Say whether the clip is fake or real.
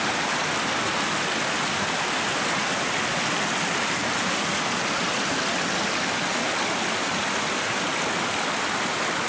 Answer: real